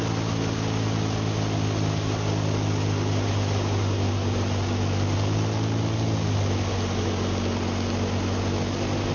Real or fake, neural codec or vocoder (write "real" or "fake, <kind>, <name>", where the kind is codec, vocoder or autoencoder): real